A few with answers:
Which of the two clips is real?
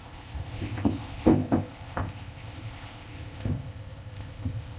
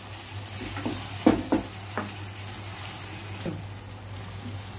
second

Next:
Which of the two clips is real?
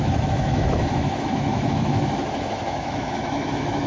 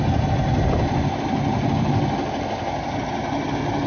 second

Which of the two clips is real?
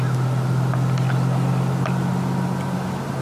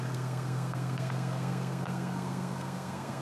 first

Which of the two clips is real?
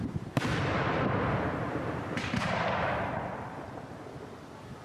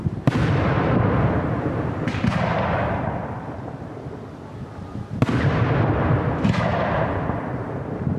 second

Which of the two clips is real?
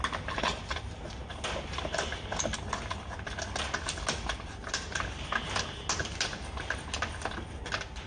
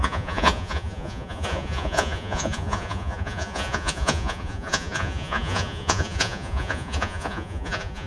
first